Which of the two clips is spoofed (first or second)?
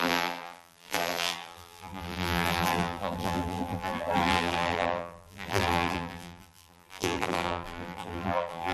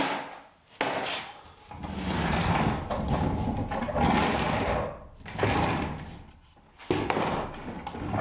first